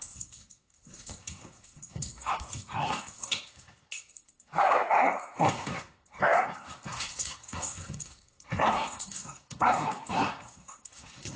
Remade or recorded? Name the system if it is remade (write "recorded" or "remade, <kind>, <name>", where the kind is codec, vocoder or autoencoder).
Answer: remade, codec, SNAC